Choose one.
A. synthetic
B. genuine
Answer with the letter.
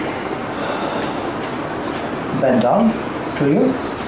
B